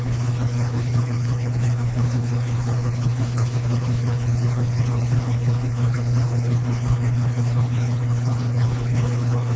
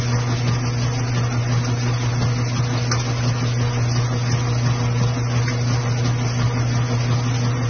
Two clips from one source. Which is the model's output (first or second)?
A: first